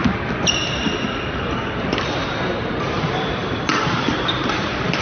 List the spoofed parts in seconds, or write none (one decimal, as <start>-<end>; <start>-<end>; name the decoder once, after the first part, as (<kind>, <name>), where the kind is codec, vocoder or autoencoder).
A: none